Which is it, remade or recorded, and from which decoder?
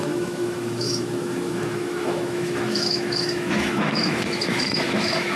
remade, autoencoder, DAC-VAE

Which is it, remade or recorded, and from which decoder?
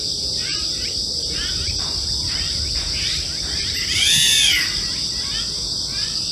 recorded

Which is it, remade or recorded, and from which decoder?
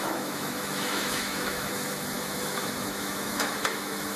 remade, autoencoder, DAC-VAE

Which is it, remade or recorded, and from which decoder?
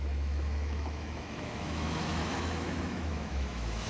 remade, autoencoder, DAC-VAE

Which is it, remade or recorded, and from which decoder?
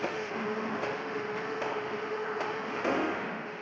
remade, autoencoder, DAC-VAE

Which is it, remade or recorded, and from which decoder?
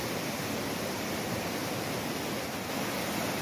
recorded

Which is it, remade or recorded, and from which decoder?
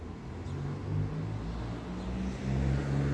recorded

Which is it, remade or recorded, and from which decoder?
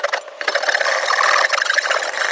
recorded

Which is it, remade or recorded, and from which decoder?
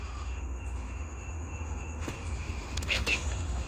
remade, autoencoder, DAC-VAE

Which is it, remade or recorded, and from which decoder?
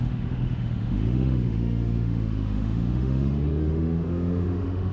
remade, autoencoder, DAC-VAE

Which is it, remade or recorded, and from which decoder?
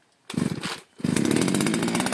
recorded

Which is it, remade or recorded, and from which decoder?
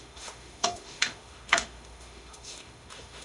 remade, autoencoder, DAC-VAE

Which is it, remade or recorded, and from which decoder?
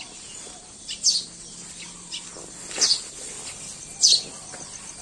recorded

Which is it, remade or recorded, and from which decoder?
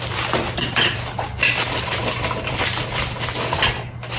recorded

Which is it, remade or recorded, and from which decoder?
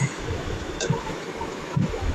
remade, autoencoder, DAC-VAE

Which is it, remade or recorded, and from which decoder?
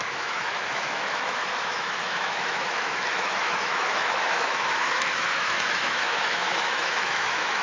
remade, autoencoder, DAC-VAE